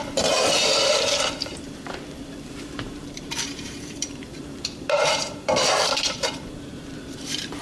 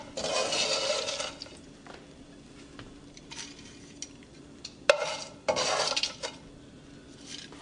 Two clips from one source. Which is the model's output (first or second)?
first